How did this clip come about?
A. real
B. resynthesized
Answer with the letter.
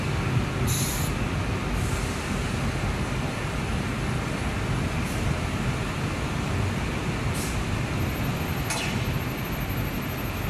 A